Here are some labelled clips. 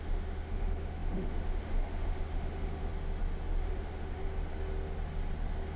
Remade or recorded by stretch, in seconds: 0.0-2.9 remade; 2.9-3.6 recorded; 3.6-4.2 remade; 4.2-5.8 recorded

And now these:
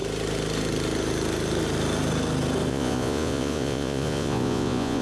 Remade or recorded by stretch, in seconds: 0.0-2.7 recorded; 2.7-5.0 remade